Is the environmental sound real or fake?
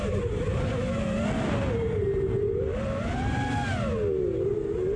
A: real